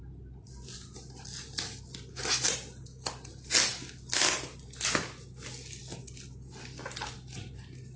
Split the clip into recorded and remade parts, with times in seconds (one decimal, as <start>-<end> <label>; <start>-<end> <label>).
0.0-8.0 recorded